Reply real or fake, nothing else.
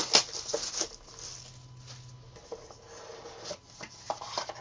real